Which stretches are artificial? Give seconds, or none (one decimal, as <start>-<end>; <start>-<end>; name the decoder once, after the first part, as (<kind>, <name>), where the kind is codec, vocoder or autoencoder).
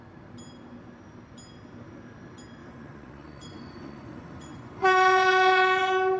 2.6-6.2 (vocoder, Vocos)